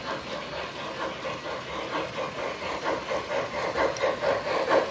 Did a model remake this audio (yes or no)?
no